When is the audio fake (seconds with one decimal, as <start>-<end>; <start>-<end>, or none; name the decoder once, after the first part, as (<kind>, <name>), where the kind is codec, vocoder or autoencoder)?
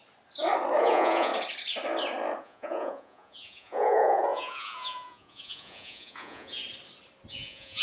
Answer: 0.8-1.3 (vocoder, Vocos); 2.4-6.6; 7.3-7.8